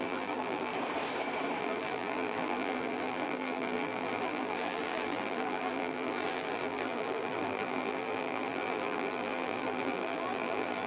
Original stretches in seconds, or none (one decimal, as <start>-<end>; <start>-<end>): 0.7-1.6